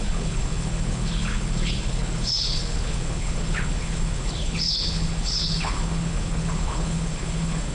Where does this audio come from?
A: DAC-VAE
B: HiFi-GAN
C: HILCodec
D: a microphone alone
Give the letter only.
C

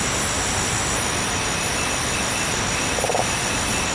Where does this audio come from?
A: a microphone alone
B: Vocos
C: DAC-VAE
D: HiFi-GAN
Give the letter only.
A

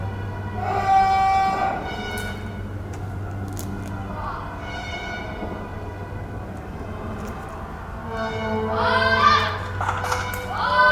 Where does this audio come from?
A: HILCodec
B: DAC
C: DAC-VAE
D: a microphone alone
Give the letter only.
D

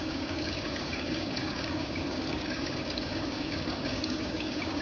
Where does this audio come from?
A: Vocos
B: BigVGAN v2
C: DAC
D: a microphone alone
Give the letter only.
C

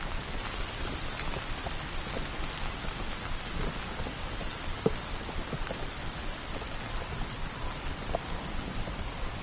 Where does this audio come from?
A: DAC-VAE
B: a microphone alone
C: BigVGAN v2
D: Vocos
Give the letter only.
B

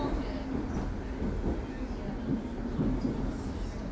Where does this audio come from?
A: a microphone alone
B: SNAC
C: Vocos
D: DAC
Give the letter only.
A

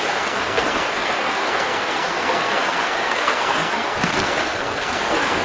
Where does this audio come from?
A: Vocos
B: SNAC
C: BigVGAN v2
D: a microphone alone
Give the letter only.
B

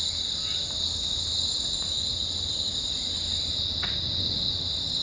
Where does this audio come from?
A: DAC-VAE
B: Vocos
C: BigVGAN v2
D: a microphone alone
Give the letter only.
D